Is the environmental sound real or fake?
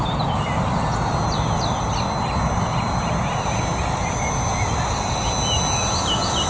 real